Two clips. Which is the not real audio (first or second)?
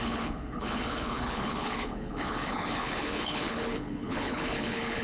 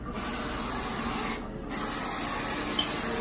first